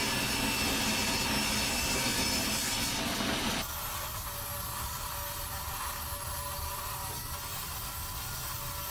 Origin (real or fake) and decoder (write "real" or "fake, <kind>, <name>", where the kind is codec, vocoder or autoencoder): real